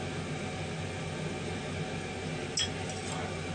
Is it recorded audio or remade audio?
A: recorded